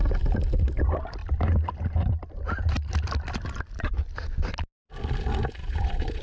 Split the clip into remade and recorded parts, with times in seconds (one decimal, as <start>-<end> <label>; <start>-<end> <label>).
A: 0.0-5.6 recorded; 5.6-6.2 remade